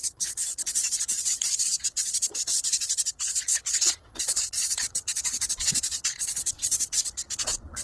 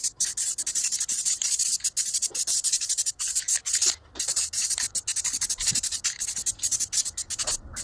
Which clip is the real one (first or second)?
second